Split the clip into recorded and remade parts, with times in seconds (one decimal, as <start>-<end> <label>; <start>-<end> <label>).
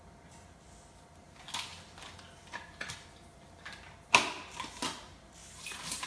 0.0-6.1 recorded